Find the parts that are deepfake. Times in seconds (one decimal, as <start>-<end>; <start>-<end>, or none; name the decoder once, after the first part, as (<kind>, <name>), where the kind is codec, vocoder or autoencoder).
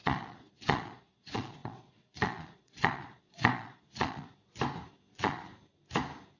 0.0-4.3 (vocoder, Vocos); 5.1-5.5